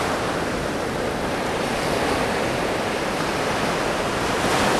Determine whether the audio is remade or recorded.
recorded